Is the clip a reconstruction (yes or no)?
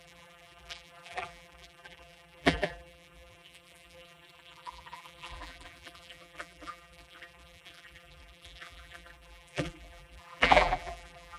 yes